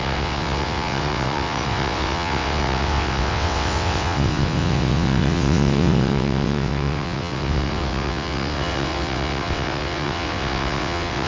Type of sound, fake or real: fake